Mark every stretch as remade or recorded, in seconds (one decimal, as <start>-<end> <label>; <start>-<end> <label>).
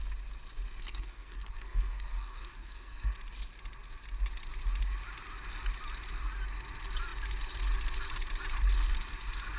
0.0-0.8 recorded; 0.8-3.1 remade; 3.1-9.6 recorded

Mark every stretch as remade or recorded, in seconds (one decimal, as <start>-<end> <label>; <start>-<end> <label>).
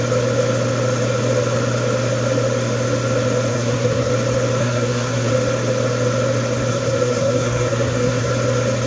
0.0-3.5 recorded; 3.5-4.1 remade; 4.1-4.6 recorded; 4.6-5.3 remade; 5.3-6.7 recorded; 6.7-8.3 remade; 8.3-8.9 recorded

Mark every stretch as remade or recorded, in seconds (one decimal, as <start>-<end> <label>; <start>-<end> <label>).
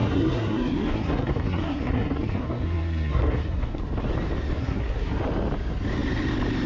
0.0-3.8 remade; 3.8-4.6 recorded; 4.6-5.2 remade; 5.2-6.7 recorded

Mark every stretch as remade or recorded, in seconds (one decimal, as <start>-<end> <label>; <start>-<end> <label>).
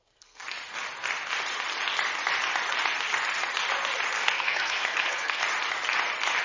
0.0-0.4 remade; 0.4-4.2 recorded; 4.2-5.4 remade; 5.4-6.4 recorded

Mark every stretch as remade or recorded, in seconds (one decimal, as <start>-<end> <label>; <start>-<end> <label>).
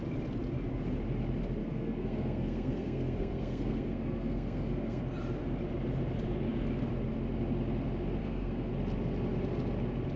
0.0-1.6 recorded; 1.6-5.0 remade; 5.0-8.2 recorded; 8.2-8.7 remade; 8.7-10.2 recorded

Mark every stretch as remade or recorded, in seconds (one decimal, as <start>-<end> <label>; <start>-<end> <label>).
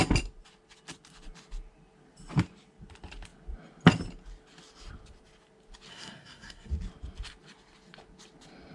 0.0-5.9 recorded; 5.9-6.7 remade; 6.7-8.7 recorded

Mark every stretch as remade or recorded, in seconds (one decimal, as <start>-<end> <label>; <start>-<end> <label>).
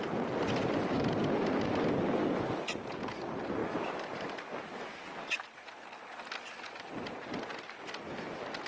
0.0-8.7 recorded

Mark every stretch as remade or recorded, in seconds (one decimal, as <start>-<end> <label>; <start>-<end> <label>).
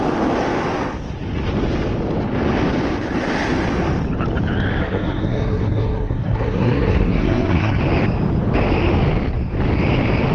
0.0-4.8 recorded; 4.8-7.8 remade; 7.8-10.3 recorded